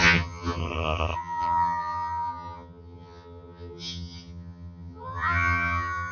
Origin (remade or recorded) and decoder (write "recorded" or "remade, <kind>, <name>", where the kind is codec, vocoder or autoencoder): remade, vocoder, HiFi-GAN